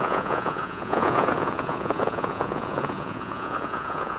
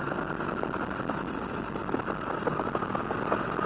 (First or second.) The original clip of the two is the second